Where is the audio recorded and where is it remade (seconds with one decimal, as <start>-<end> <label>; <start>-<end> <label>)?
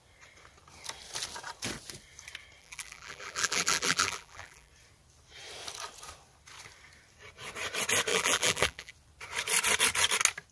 0.0-2.6 recorded; 2.6-4.7 remade; 4.7-8.1 recorded; 8.1-8.9 remade; 8.9-10.5 recorded